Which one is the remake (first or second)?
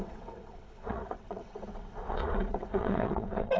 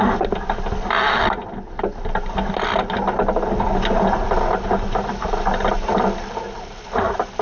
first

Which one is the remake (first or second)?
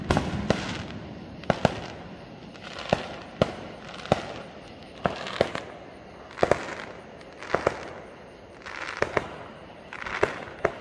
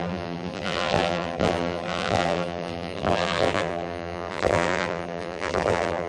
second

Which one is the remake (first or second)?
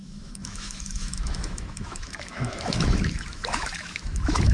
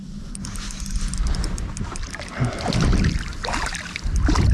first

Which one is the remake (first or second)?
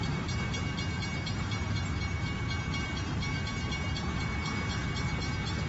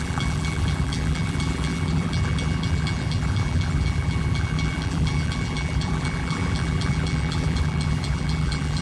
second